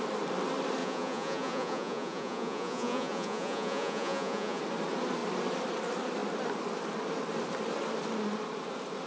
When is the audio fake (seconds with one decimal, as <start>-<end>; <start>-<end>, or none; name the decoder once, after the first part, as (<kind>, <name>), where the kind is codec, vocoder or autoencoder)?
0.8-4.6 (vocoder, Vocos)